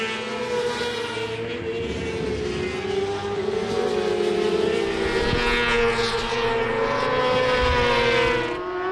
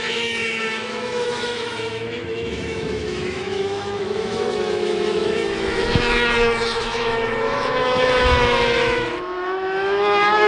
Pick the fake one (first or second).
second